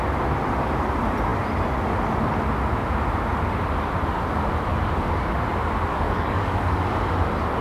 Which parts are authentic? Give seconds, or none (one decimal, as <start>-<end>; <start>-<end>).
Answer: 0.0-4.7; 5.4-5.9; 7.0-7.6